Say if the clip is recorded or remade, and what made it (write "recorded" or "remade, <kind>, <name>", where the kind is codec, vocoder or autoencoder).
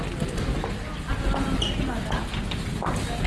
recorded